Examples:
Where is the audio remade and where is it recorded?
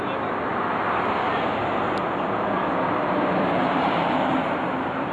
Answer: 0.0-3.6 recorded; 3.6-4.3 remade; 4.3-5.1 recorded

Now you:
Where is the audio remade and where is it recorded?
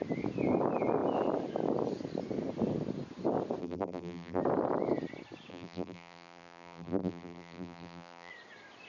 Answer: 0.0-3.6 recorded; 3.6-4.4 remade; 4.4-5.5 recorded; 5.5-8.3 remade; 8.3-8.9 recorded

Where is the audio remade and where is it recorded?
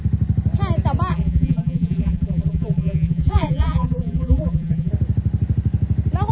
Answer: 0.0-1.1 recorded; 1.1-4.9 remade; 4.9-6.3 recorded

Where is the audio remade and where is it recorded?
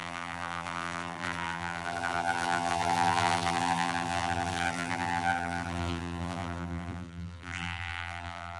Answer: 0.0-8.6 remade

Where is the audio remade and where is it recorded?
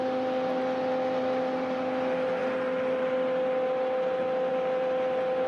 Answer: 0.0-5.5 recorded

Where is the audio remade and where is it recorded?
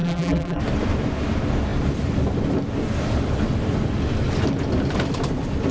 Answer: 0.0-0.6 remade; 0.6-5.7 recorded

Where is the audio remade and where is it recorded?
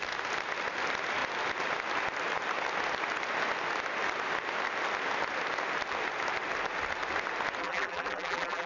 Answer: 0.0-7.6 recorded; 7.6-8.7 remade